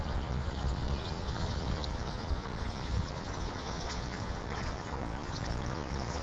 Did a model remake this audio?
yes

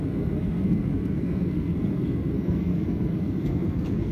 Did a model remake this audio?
yes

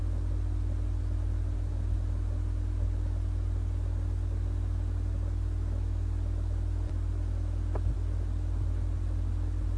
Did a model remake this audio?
no